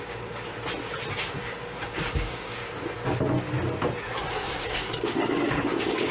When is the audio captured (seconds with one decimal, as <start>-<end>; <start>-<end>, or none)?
0.5-1.1; 2.6-4.3